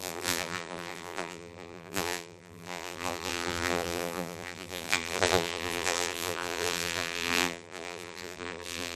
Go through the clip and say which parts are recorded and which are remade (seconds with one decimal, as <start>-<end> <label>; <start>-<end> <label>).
0.0-8.9 remade